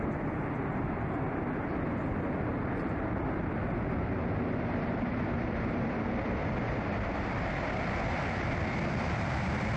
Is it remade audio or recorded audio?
recorded